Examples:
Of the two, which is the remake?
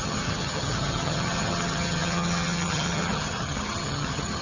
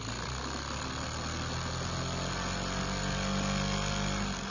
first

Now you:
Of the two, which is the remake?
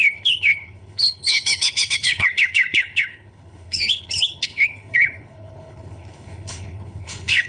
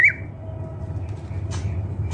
first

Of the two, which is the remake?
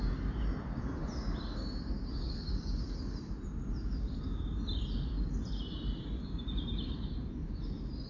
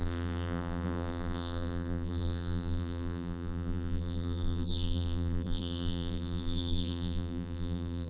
second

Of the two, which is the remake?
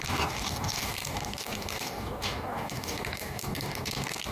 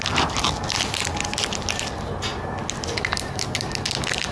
first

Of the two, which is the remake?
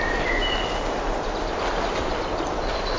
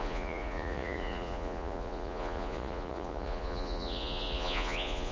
second